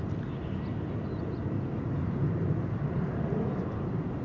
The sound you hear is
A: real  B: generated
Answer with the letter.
A